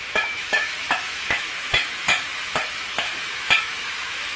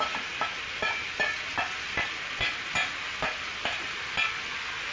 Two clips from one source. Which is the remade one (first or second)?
first